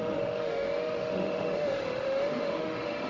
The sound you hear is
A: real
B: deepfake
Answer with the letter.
B